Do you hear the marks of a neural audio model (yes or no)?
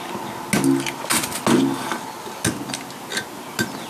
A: no